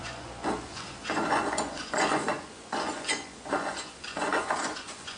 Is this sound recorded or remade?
remade